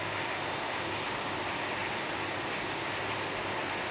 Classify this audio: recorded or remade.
recorded